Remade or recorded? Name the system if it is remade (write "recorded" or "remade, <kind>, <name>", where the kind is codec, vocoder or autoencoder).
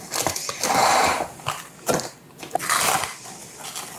recorded